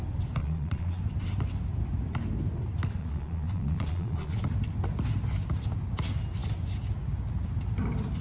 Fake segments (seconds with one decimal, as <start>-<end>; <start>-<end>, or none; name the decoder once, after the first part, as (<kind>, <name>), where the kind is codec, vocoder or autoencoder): 0.4-1.0 (vocoder, Vocos); 3.0-4.4